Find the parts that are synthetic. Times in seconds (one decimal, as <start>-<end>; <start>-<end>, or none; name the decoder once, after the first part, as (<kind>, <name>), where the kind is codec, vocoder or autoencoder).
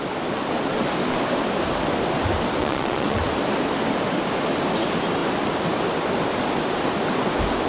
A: 2.6-3.2 (vocoder, Vocos)